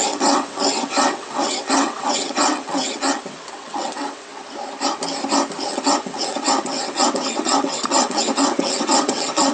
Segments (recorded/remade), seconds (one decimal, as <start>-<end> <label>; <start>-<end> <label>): 0.0-4.3 remade; 4.3-5.7 recorded; 5.7-9.5 remade